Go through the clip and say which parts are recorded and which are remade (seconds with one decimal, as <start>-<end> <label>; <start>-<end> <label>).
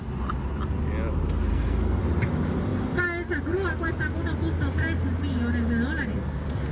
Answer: 0.0-1.5 recorded; 1.5-2.0 remade; 2.0-6.7 recorded